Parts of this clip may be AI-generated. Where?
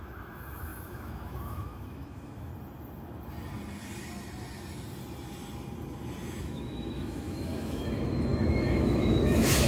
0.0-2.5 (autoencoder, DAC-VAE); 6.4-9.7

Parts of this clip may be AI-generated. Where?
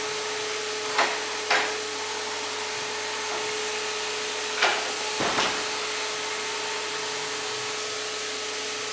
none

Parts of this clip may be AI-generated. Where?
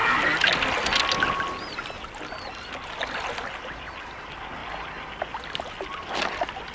4.6-5.7 (vocoder, BigVGAN v2)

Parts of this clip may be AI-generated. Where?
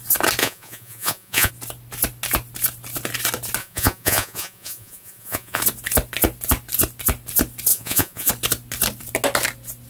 0.4-1.5 (vocoder, Vocos); 3.6-5.6; 7.7-8.3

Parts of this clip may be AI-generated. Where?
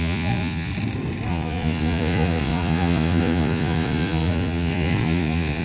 0.0-0.7 (vocoder, Vocos); 1.3-5.6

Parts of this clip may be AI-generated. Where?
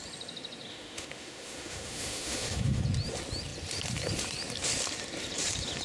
0.7-2.8 (autoencoder, DAC-VAE)